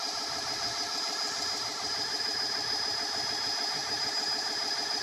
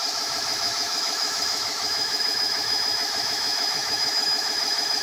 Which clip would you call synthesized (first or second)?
second